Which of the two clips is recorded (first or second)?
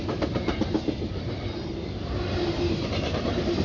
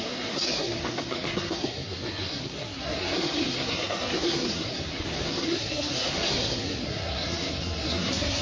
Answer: first